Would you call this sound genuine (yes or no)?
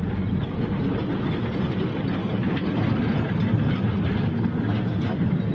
yes